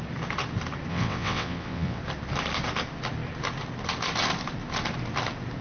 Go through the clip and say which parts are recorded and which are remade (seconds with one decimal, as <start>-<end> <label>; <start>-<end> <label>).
0.0-0.9 recorded; 0.9-2.0 remade; 2.0-5.6 recorded